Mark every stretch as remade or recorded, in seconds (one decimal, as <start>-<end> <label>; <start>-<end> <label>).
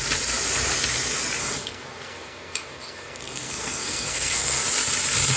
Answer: 0.0-1.4 recorded; 1.4-4.6 remade; 4.6-5.4 recorded